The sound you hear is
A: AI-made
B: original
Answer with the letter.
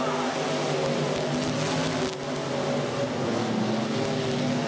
B